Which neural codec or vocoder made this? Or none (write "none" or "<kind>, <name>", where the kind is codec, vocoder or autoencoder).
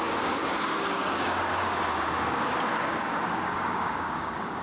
codec, DAC